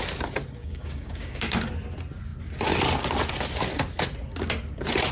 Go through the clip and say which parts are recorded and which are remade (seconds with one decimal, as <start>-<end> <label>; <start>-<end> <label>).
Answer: 0.0-0.6 recorded; 0.6-1.7 remade; 1.7-5.1 recorded